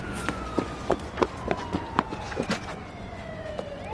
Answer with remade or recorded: remade